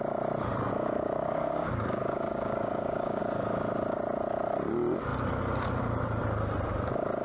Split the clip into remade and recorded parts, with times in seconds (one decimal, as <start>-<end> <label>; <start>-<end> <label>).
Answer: 0.0-0.7 recorded; 0.7-3.2 remade; 3.2-7.2 recorded